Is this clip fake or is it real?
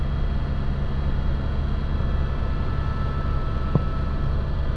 real